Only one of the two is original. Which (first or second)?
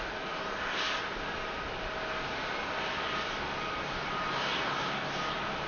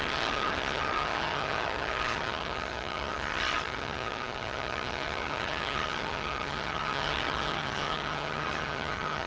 first